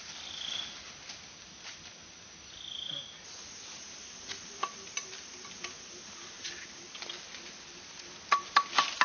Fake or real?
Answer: real